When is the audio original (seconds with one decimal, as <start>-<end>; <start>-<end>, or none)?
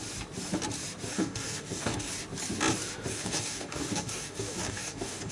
0.0-1.1; 2.1-3.1